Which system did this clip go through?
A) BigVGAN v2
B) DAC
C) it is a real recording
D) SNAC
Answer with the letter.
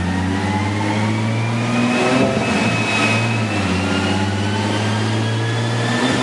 C